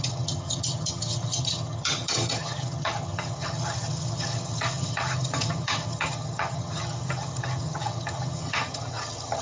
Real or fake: fake